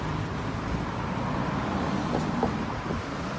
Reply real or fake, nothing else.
real